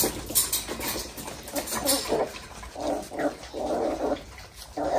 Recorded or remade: recorded